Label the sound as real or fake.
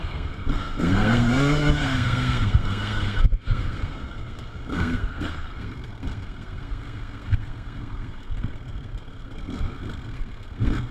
fake